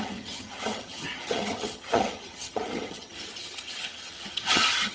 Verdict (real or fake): fake